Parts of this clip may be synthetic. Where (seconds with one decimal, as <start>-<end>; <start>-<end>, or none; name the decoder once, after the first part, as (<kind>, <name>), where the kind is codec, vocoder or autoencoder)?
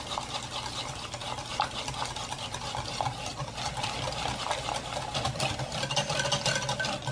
none